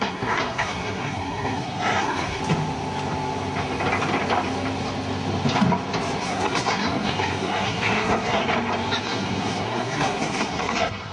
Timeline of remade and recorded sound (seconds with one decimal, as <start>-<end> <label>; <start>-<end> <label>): 0.0-2.4 remade; 2.4-6.2 recorded; 6.2-8.4 remade; 8.4-9.0 recorded; 9.0-11.1 remade